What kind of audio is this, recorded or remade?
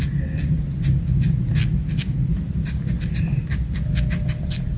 recorded